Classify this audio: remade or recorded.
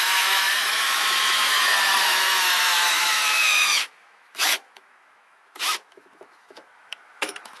remade